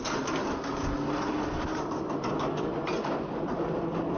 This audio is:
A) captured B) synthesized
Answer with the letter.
A